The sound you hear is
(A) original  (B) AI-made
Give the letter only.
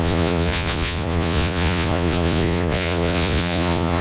B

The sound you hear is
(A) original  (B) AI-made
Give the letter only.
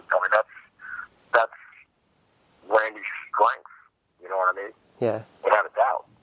A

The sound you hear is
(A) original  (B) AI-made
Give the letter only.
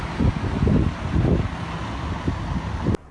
A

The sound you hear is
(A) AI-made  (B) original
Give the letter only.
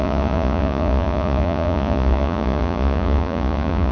A